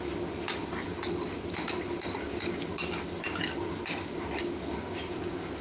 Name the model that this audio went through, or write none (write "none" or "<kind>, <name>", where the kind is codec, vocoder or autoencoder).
none